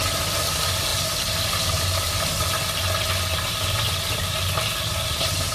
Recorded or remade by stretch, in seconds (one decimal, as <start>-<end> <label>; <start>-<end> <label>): 0.0-5.5 recorded